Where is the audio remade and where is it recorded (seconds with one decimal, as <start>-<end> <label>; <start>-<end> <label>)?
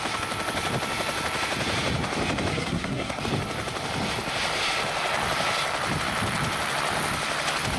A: 0.0-2.5 recorded; 2.5-3.2 remade; 3.2-7.8 recorded